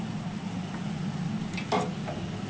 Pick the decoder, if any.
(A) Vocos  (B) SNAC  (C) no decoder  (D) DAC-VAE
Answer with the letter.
C